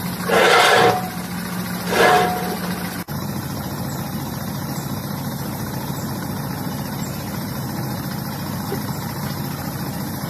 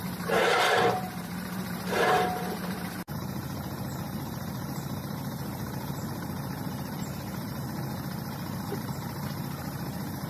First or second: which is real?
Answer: first